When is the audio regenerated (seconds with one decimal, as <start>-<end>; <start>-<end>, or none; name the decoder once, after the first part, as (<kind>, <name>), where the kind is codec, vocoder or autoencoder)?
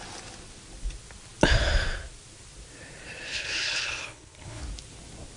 3.3-4.6 (codec, HILCodec)